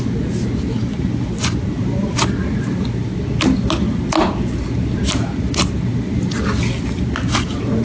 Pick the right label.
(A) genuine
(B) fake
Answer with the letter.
A